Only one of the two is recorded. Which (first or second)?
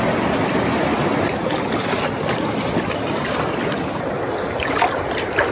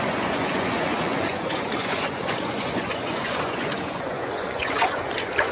first